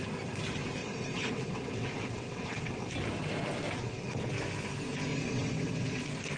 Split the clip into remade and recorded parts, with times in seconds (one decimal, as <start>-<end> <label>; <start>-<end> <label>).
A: 0.0-0.8 recorded; 0.8-2.9 remade; 2.9-3.8 recorded; 3.8-4.3 remade; 4.3-5.1 recorded; 5.1-6.0 remade; 6.0-6.4 recorded